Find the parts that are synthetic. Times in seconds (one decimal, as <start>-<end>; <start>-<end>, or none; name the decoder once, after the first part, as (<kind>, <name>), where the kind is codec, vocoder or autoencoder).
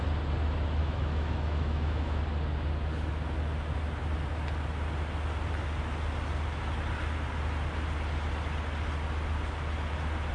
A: 0.8-2.2 (autoencoder, DAC-VAE)